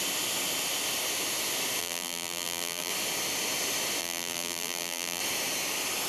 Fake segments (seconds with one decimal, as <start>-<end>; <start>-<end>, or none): 1.8-2.9; 4.0-5.2